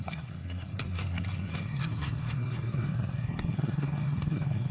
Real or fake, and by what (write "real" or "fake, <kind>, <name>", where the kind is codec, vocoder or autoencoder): fake, codec, SNAC